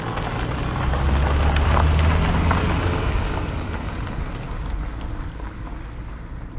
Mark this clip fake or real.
real